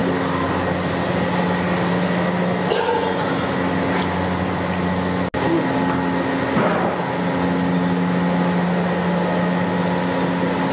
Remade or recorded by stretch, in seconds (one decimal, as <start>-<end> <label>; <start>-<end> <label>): 0.0-2.7 recorded; 2.7-3.3 remade; 3.3-10.7 recorded